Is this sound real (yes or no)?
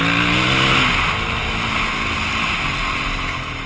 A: yes